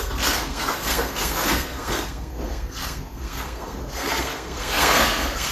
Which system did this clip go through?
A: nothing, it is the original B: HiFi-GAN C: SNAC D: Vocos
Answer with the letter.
C